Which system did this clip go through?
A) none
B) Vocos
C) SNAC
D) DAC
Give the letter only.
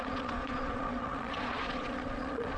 B